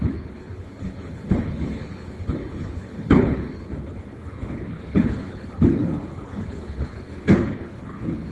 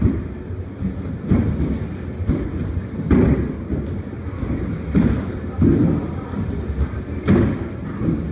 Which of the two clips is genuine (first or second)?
second